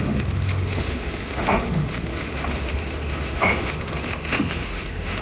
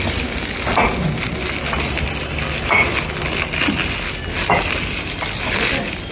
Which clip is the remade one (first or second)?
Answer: first